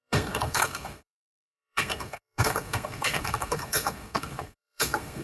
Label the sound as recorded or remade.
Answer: remade